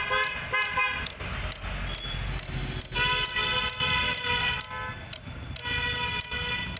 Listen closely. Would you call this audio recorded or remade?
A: recorded